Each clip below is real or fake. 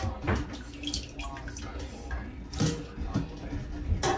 real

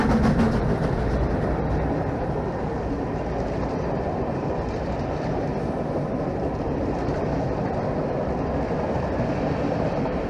real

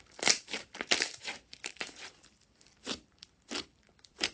fake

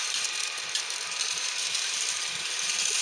fake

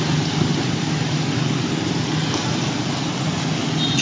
real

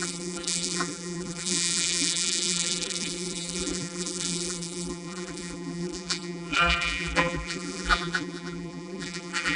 fake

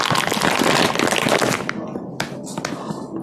real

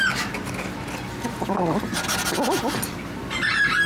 real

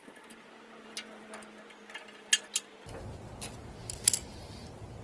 real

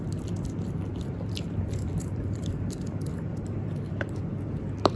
fake